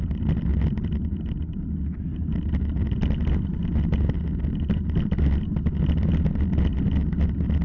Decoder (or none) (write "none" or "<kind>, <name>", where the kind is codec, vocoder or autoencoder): none